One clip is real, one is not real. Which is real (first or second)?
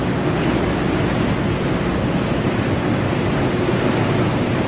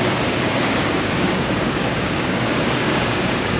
first